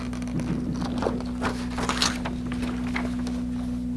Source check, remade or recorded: recorded